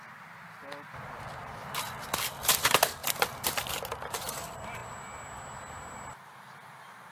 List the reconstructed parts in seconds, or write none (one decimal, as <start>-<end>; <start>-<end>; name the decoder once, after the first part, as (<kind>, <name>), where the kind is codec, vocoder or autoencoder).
none